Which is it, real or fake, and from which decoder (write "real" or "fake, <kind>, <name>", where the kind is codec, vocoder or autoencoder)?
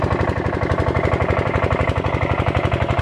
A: fake, vocoder, BigVGAN v2